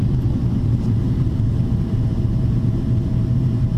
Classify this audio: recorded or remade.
recorded